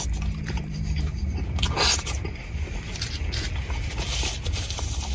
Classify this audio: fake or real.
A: fake